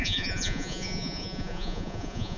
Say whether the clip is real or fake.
fake